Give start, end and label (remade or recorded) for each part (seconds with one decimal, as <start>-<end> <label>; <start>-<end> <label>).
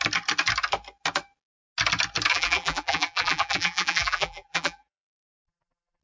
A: 0.0-2.3 recorded; 2.3-6.0 remade